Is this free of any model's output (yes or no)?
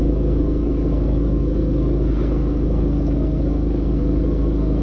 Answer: no